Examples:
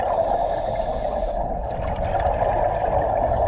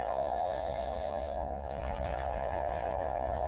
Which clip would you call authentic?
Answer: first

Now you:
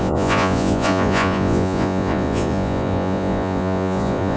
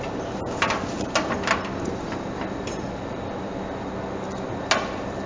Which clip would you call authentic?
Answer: second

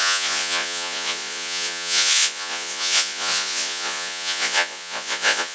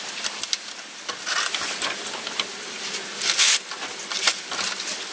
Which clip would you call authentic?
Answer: second